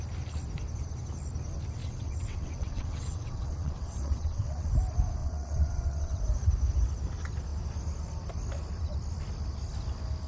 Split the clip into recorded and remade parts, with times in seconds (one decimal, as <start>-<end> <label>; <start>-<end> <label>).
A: 0.0-1.8 recorded; 1.8-4.7 remade; 4.7-5.2 recorded; 5.2-6.2 remade; 6.2-10.3 recorded